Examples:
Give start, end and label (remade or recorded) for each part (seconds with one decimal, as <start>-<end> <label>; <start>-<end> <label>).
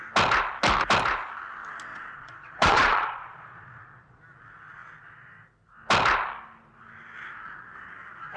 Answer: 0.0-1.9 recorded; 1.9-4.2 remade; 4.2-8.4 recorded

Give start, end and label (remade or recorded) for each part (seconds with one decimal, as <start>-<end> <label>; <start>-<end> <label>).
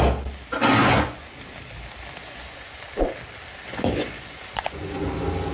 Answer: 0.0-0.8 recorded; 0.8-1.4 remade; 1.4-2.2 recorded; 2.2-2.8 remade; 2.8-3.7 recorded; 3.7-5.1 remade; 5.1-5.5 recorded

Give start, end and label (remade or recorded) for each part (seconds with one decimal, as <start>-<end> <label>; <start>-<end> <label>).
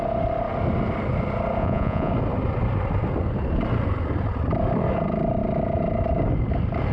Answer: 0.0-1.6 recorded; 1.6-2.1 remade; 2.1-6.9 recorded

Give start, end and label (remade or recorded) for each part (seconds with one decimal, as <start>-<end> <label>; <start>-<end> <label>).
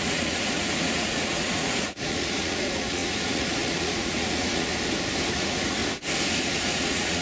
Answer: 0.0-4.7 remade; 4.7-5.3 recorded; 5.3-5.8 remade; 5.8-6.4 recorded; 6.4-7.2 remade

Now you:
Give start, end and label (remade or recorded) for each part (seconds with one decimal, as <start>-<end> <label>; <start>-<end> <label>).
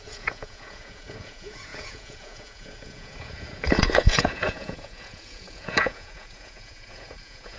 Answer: 0.0-7.6 remade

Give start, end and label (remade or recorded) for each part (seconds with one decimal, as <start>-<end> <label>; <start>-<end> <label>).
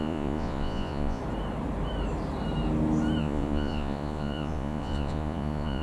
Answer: 0.0-1.2 remade; 1.2-3.2 recorded; 3.2-5.8 remade